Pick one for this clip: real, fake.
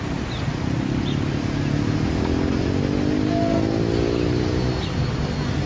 real